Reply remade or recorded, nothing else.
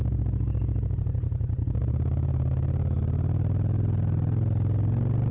recorded